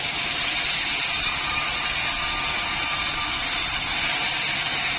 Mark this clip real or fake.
real